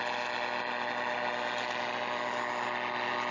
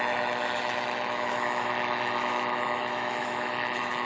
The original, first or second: first